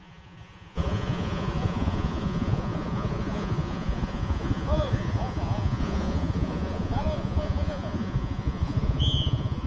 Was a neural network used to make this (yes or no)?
yes